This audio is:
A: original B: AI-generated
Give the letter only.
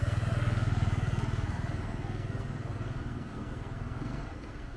B